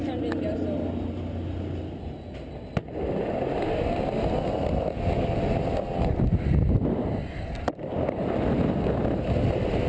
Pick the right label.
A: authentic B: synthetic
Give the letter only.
A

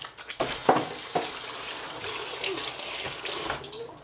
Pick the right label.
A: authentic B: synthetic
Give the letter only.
A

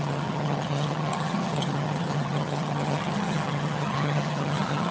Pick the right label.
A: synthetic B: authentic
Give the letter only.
A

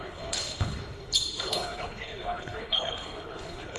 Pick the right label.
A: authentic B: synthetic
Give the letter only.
B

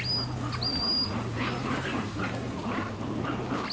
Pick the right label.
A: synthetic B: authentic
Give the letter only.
B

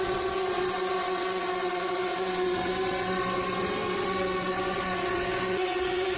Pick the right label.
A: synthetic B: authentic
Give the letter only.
A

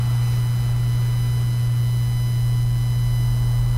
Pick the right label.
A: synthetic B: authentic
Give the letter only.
B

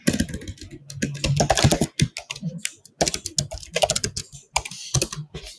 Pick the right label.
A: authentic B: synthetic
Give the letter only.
A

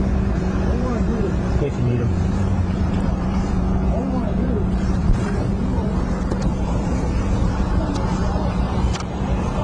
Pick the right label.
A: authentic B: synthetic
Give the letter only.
B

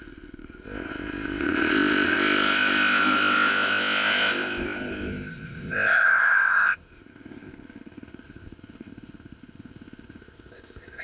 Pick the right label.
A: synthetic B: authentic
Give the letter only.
A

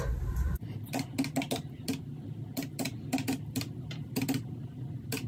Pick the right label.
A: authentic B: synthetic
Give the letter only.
A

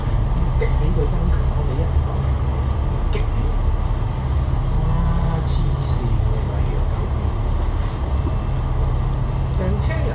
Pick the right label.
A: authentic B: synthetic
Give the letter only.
A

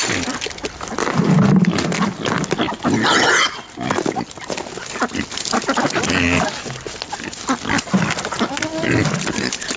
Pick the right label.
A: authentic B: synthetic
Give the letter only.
A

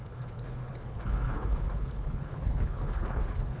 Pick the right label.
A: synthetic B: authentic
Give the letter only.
A